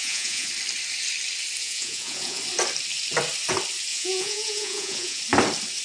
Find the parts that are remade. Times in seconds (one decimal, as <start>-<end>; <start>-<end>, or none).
0.0-0.5; 1.6-2.4; 3.9-5.2